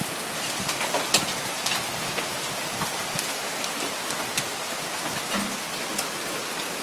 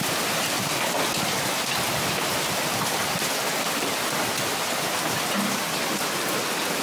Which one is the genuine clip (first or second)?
first